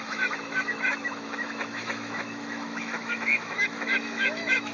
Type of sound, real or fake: fake